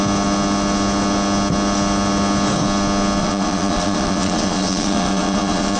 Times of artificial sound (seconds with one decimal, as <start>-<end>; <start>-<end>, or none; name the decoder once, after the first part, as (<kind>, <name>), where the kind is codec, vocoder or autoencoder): 3.2-5.8 (vocoder, Vocos)